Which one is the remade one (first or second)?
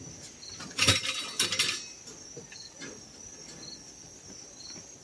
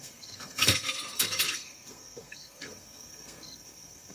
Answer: second